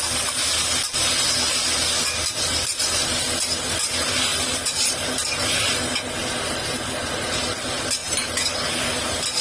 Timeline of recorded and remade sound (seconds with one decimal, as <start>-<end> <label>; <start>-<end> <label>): 0.0-8.0 recorded; 8.0-8.6 remade; 8.6-9.4 recorded